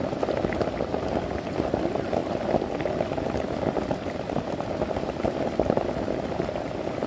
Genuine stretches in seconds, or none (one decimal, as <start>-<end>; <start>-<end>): 0.0-2.2; 6.2-7.1

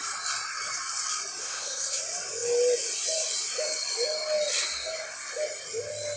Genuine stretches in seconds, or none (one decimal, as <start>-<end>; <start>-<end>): 0.0-1.4; 2.0-6.2

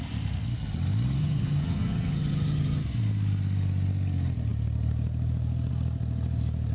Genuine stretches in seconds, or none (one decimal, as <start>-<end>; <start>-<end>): 0.0-1.2; 2.8-6.7

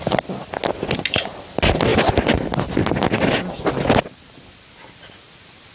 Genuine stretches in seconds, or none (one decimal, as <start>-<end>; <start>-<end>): 0.0-5.7

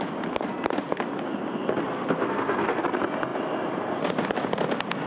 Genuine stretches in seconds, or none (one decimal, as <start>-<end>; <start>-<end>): 0.0-1.9; 2.8-5.1

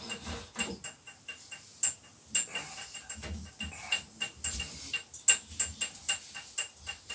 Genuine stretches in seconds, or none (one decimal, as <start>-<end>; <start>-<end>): 0.0-7.1